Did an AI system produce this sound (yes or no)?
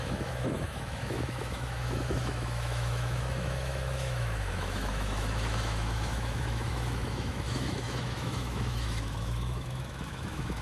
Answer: yes